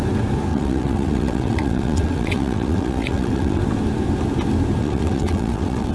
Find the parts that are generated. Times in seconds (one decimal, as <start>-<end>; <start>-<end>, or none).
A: 0.5-3.6; 4.8-5.9